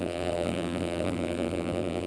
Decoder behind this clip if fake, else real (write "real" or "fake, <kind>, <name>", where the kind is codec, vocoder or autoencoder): fake, vocoder, BigVGAN v2